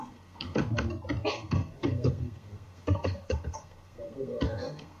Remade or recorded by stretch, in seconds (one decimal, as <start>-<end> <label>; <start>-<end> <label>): 0.0-0.6 remade; 0.6-1.3 recorded; 1.3-5.0 remade